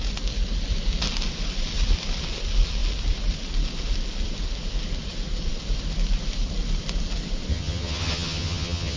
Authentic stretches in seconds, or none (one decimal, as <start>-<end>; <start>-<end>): 0.0-7.5